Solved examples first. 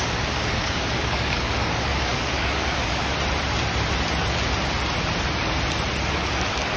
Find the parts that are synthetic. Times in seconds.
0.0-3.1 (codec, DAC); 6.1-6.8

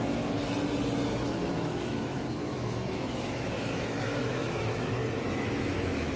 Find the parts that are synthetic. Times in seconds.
0.0-0.4 (autoencoder, DAC-VAE); 1.1-5.0; 5.5-6.2

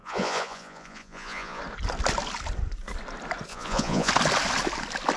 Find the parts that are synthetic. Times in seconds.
0.0-1.6 (vocoder, Vocos); 3.5-4.1

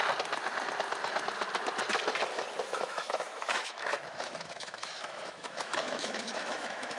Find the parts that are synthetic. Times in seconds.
2.6-7.0 (autoencoder, DAC-VAE)

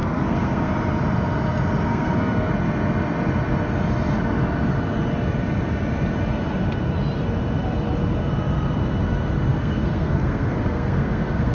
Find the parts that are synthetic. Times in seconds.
0.0-0.7 (codec, SNAC); 1.9-2.5; 9.5-11.5